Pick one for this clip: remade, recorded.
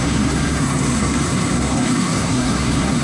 remade